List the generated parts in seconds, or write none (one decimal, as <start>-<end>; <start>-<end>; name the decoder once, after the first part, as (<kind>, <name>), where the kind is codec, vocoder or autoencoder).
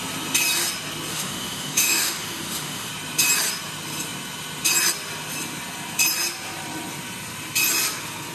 1.1-2.9 (autoencoder, DAC-VAE)